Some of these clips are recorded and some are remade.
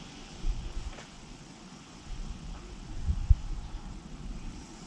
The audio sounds remade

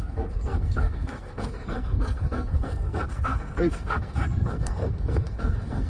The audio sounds remade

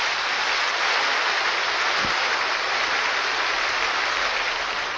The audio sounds recorded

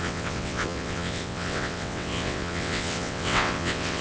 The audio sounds remade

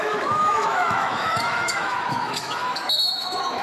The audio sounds remade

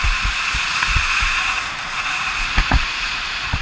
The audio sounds remade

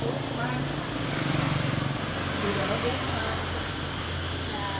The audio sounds remade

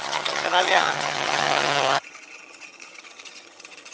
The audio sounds remade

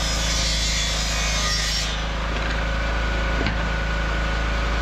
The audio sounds recorded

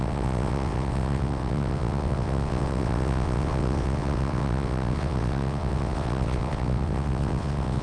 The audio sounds remade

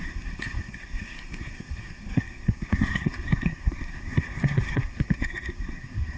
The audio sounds remade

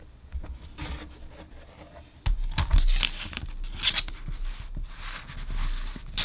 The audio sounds recorded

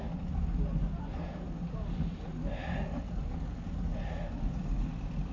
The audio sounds recorded